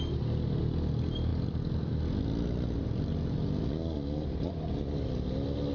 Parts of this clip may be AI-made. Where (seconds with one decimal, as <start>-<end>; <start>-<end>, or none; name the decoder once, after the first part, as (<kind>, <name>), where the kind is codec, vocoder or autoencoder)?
none